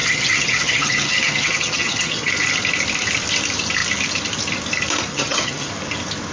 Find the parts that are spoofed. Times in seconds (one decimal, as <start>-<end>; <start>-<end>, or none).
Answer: 0.0-2.3; 5.1-5.7